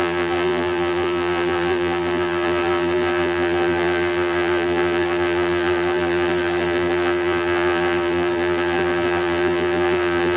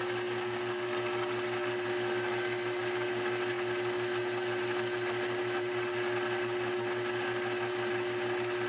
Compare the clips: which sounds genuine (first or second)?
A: second